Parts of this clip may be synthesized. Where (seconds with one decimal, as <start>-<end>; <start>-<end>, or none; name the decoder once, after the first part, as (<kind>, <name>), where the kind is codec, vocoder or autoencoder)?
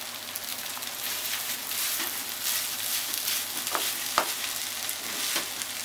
0.5-1.7 (vocoder, BigVGAN v2)